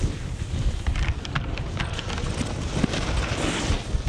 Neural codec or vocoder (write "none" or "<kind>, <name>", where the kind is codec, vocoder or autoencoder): none